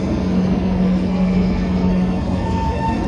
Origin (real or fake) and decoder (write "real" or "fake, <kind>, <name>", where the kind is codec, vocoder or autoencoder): fake, codec, SNAC